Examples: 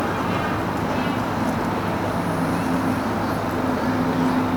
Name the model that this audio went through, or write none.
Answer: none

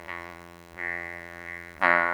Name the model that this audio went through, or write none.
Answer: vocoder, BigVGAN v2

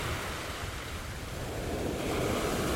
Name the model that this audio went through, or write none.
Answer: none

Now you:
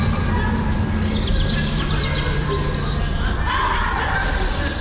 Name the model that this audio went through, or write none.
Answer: none